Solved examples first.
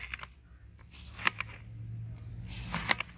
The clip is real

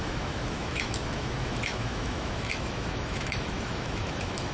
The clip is fake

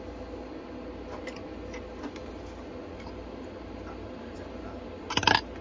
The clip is real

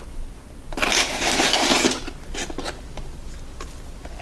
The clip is real